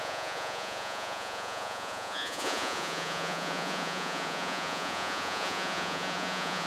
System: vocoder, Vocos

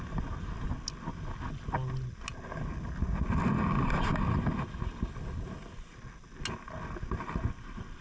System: none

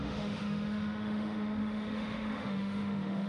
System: autoencoder, DAC-VAE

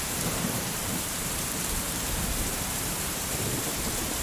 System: vocoder, BigVGAN v2